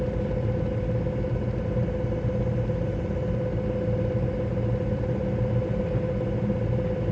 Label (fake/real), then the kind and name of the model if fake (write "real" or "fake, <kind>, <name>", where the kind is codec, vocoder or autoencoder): real